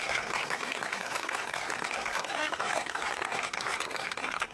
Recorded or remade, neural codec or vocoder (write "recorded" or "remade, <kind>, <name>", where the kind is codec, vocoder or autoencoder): remade, codec, SNAC